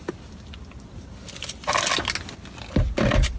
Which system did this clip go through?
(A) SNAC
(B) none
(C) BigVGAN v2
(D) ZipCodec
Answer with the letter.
B